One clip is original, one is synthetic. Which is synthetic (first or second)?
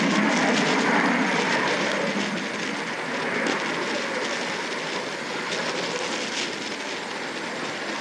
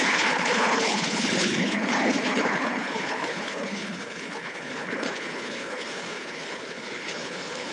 second